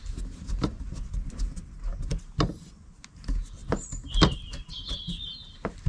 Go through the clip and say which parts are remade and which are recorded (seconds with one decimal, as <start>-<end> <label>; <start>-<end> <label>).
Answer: 0.0-5.9 recorded